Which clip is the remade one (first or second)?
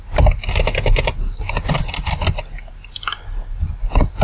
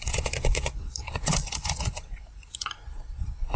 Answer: second